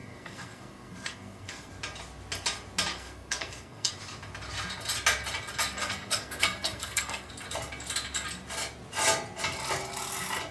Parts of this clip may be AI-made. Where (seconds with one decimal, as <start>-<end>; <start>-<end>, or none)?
0.0-1.7; 2.9-3.9; 5.8-7.3